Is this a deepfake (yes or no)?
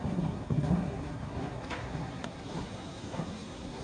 yes